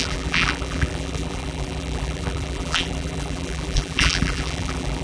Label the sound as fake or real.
fake